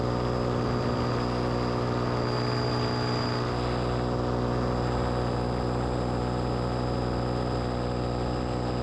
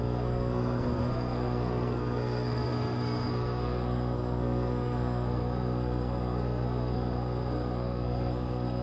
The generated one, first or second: second